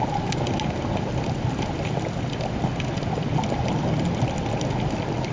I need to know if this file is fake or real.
real